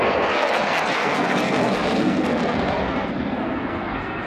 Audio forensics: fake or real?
fake